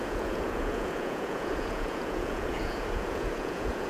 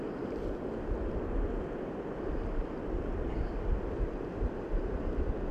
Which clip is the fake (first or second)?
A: first